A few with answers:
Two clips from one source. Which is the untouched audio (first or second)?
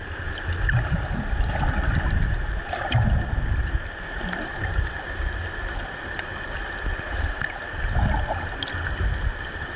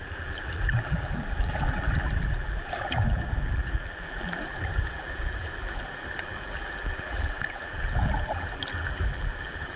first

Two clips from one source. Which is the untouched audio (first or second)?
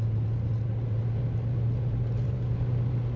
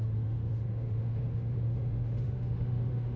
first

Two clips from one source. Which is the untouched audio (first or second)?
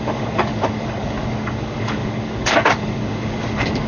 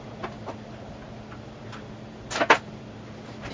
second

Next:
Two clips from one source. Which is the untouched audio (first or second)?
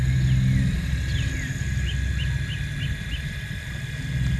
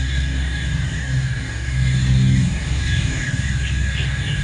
first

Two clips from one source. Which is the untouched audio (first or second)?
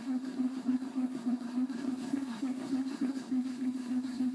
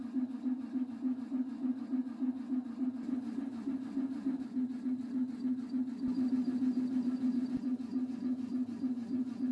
second